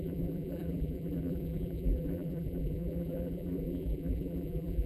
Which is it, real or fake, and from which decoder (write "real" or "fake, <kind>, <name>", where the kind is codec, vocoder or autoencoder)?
fake, vocoder, BigVGAN v2